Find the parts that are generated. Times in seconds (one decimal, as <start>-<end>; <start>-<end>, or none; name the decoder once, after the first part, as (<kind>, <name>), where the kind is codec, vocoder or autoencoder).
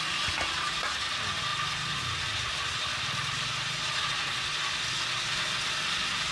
none